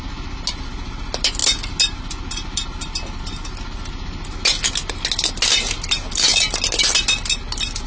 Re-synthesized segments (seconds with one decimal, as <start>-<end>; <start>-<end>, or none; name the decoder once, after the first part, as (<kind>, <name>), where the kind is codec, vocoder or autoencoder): none